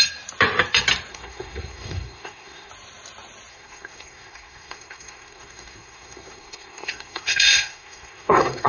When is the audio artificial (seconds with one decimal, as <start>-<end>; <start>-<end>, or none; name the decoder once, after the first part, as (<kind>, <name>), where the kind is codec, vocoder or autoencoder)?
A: 1.1-2.7 (codec, SNAC); 3.5-8.7